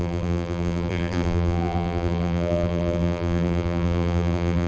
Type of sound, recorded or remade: remade